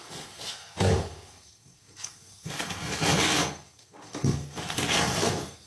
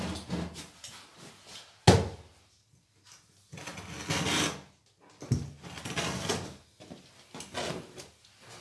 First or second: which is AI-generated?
first